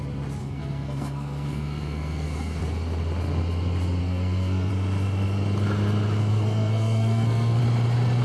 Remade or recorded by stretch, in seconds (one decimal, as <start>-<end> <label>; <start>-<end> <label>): 0.0-0.4 recorded; 0.4-2.6 remade; 2.6-4.0 recorded; 4.0-4.7 remade; 4.7-6.3 recorded; 6.3-7.6 remade; 7.6-8.2 recorded